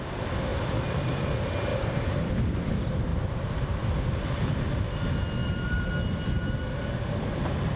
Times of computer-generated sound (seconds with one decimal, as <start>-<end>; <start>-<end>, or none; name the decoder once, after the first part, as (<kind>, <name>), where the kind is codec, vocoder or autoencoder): 0.5-1.2 (vocoder, BigVGAN v2); 1.7-2.3; 3.1-3.7; 5.4-5.9